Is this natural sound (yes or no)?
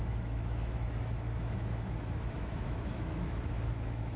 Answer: no